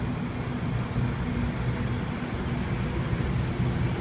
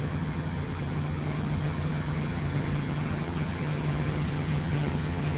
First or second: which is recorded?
first